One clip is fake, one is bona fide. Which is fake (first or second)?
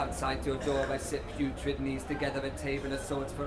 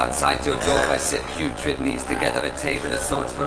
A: second